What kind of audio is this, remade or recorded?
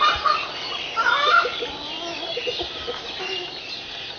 recorded